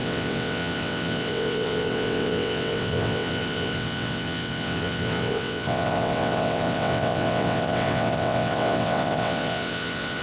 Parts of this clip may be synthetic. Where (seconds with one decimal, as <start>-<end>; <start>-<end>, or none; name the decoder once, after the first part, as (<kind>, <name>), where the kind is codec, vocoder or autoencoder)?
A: 0.0-10.2 (vocoder, WaveNeXt)